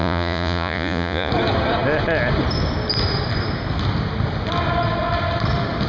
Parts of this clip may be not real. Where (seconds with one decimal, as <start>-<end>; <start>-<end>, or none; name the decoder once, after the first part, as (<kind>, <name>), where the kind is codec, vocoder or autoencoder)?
0.0-1.3 (vocoder, Vocos)